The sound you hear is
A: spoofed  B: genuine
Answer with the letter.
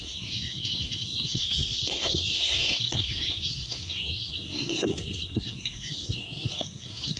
A